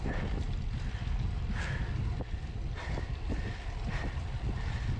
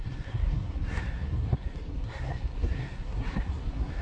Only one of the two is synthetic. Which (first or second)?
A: second